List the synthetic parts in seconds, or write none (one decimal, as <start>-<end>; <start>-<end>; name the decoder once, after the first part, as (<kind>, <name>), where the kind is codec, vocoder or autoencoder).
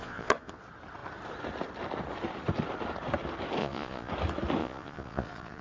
0.0-0.6 (vocoder, Vocos); 3.6-4.1; 4.6-5.6